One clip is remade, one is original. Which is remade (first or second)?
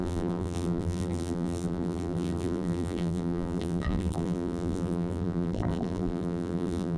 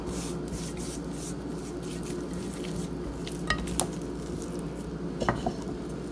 first